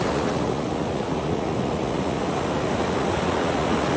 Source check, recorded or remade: remade